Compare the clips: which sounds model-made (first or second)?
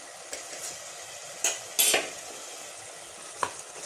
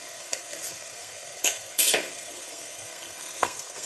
second